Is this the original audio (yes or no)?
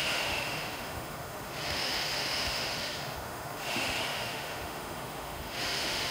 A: no